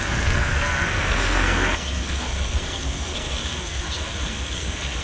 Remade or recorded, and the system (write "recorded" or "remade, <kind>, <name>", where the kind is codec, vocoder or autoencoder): remade, codec, SNAC